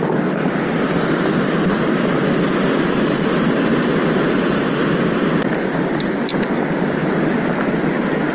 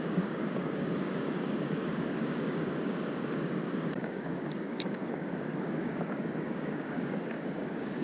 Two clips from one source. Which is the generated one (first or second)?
second